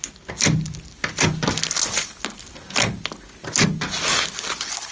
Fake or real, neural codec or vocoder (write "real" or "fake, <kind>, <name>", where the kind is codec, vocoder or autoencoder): real